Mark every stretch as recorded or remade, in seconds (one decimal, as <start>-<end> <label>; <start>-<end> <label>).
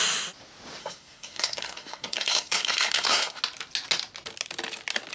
0.0-0.8 recorded; 0.8-3.4 remade; 3.4-5.1 recorded